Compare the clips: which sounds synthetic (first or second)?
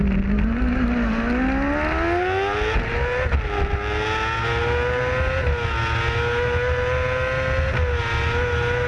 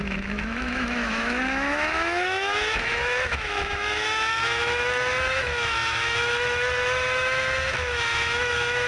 second